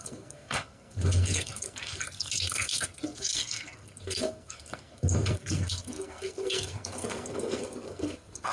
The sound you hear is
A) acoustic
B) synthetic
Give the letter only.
B